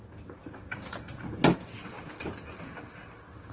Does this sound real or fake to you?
real